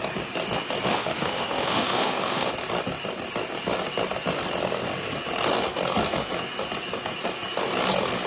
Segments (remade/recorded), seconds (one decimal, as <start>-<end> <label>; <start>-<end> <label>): 0.0-0.9 recorded; 0.9-2.5 remade; 2.5-8.3 recorded